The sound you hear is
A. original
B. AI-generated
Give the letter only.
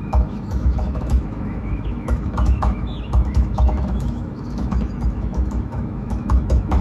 B